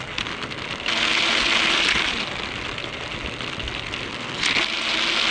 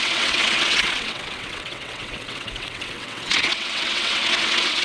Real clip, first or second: first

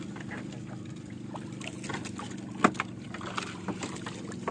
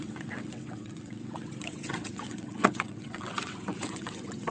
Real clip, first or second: first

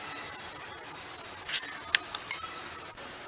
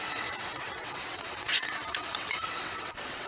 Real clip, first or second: first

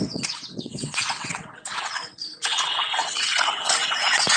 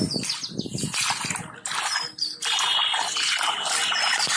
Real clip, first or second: second